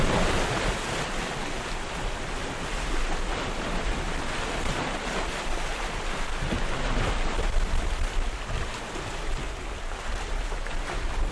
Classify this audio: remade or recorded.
recorded